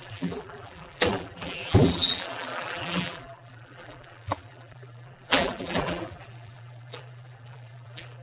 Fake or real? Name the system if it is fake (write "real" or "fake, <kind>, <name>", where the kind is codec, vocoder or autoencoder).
fake, vocoder, BigVGAN v2